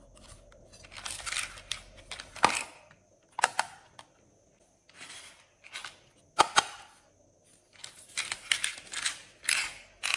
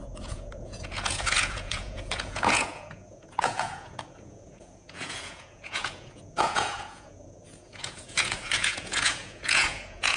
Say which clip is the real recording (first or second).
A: first